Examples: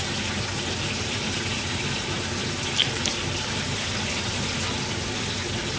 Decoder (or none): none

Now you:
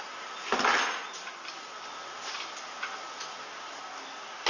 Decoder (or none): none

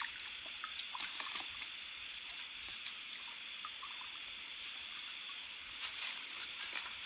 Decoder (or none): vocoder, BigVGAN v2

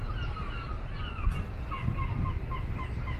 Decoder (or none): none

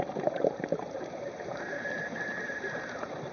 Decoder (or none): vocoder, BigVGAN v2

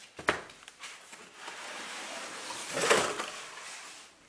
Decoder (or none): none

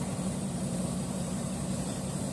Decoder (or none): vocoder, BigVGAN v2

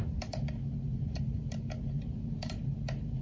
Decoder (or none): vocoder, BigVGAN v2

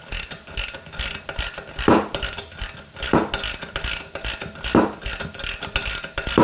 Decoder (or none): none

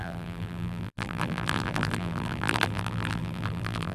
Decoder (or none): vocoder, BigVGAN v2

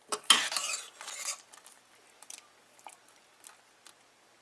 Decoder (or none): none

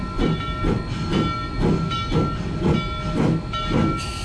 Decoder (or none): none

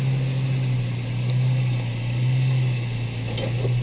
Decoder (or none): none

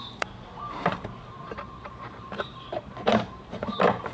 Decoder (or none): vocoder, BigVGAN v2